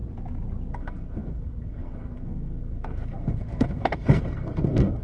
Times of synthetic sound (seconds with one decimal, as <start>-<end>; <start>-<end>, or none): 0.7-5.0